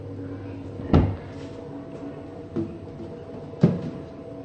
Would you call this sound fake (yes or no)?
no